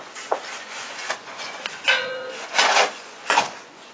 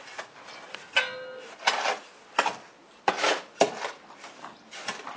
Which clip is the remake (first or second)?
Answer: first